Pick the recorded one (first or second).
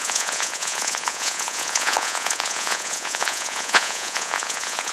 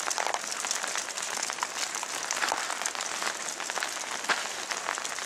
second